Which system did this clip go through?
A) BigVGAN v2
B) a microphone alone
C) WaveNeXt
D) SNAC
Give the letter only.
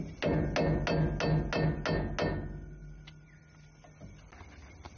B